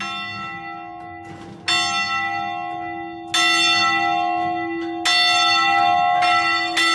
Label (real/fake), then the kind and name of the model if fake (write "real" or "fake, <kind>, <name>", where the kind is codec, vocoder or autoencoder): real